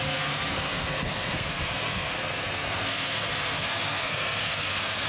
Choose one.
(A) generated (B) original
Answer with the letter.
A